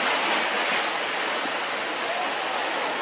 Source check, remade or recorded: recorded